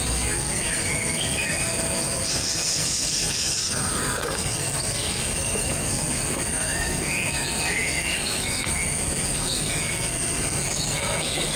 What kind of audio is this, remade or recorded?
remade